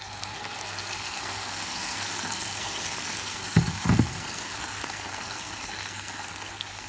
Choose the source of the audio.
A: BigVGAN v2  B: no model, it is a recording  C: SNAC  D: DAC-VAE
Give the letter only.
C